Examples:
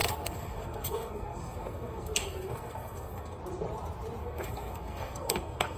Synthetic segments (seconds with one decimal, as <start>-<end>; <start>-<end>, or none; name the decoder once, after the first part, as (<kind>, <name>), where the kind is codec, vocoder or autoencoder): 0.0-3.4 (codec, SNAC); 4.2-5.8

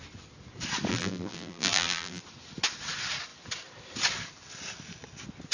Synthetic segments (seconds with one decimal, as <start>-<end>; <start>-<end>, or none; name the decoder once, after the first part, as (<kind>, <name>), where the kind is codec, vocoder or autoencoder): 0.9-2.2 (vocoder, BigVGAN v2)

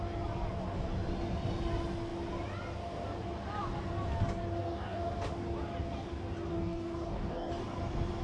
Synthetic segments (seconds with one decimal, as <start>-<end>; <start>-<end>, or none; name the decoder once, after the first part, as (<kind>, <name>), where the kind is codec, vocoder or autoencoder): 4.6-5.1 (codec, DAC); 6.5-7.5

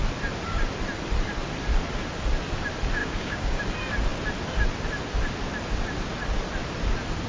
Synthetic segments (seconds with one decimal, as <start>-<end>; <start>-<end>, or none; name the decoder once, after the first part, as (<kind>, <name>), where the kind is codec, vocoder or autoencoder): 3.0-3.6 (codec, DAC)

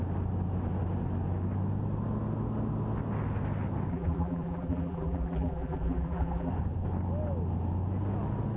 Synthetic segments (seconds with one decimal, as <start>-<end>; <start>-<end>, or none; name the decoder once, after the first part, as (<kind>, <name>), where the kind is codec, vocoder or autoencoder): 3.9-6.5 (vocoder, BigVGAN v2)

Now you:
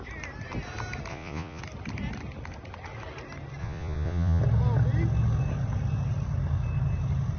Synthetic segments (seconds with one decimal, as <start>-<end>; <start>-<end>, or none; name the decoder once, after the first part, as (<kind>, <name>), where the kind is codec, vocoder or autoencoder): 1.1-1.6 (vocoder, Vocos); 3.6-4.4